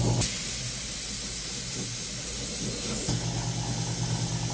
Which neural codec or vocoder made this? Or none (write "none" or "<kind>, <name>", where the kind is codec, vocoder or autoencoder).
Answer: none